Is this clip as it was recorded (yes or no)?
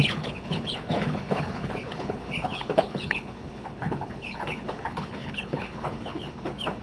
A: no